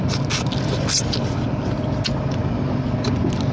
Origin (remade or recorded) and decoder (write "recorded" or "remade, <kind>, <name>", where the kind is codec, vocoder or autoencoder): recorded